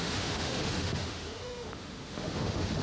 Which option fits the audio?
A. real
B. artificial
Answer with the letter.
B